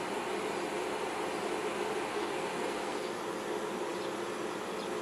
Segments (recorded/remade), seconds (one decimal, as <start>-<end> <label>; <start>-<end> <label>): 0.0-2.1 recorded; 2.1-3.1 remade; 3.1-5.0 recorded